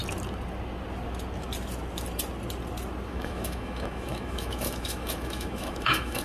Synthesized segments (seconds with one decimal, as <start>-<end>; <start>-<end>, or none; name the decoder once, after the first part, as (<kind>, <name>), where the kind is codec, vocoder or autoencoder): 3.1-6.2 (autoencoder, DAC-VAE)